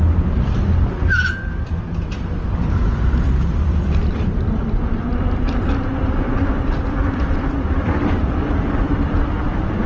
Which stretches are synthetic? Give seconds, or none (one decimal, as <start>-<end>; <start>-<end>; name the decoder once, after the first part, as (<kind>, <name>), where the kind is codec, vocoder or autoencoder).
0.0-9.9 (vocoder, BigVGAN v2)